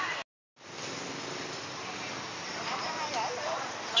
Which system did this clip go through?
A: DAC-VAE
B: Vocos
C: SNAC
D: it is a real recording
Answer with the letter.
D